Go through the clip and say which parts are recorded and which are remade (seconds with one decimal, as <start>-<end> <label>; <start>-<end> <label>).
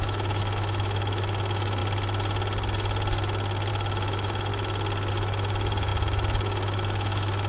0.0-1.8 remade; 1.8-3.7 recorded; 3.7-4.5 remade; 4.5-5.1 recorded; 5.1-7.5 remade